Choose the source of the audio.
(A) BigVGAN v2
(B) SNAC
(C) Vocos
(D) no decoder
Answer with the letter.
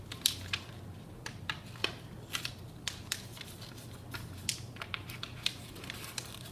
D